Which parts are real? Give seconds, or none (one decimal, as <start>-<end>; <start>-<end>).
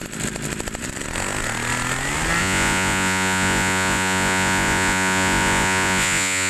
0.0-2.4